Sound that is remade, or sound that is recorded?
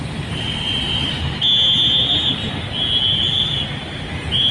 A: recorded